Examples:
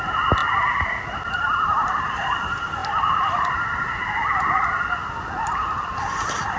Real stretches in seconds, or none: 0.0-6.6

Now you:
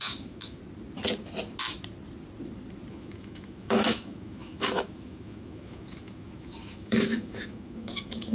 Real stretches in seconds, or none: 0.6-2.9